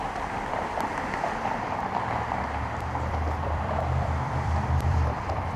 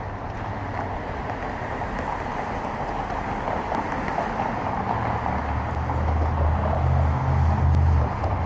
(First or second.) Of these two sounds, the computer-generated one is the first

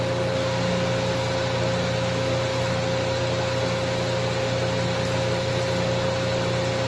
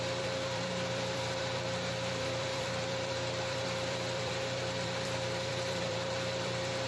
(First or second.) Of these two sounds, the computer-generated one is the second